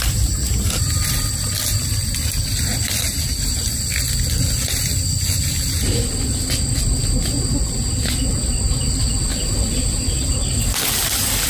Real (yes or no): yes